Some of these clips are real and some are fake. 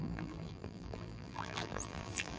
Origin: fake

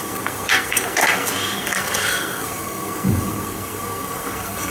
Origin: fake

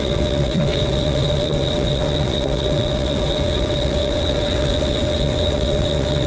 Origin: fake